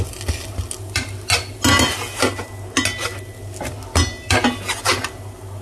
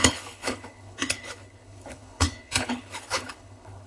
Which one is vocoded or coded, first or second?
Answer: second